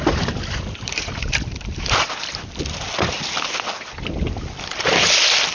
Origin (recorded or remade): recorded